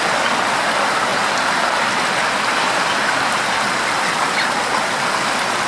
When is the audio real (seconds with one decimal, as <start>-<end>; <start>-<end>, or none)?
0.0-5.7

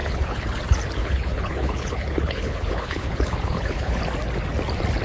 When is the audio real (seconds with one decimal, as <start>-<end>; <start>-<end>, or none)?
0.6-1.0; 4.0-5.0

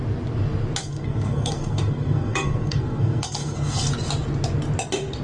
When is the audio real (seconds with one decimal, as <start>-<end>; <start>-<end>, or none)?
0.0-0.8; 3.9-5.2

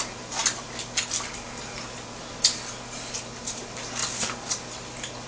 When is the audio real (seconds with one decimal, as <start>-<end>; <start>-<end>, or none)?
0.0-5.3

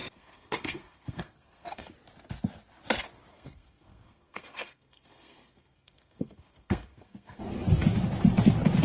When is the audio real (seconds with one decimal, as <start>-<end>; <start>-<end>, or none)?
1.9-3.3; 7.4-8.8

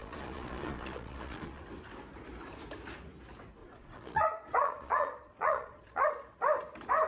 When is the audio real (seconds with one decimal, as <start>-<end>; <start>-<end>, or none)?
1.6-3.6; 6.2-7.1